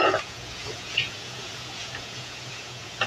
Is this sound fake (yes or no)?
yes